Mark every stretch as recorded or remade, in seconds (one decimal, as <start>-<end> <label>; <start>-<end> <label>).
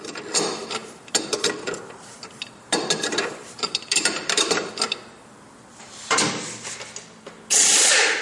0.0-0.8 recorded; 0.8-4.7 remade; 4.7-5.7 recorded; 5.7-6.2 remade; 6.2-8.2 recorded